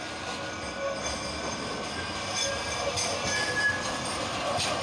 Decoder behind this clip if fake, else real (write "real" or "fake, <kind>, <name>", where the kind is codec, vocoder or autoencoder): real